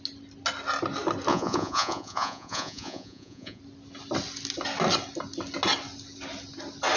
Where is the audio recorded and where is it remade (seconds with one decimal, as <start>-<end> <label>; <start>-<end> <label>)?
0.0-1.3 recorded; 1.3-3.6 remade; 3.6-7.0 recorded